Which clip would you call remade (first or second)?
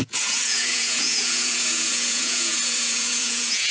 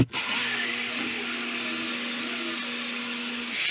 first